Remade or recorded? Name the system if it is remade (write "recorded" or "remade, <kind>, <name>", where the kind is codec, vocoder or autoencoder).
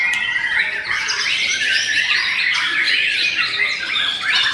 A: remade, vocoder, BigVGAN v2